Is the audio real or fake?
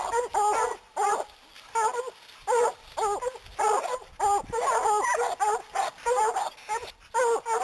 real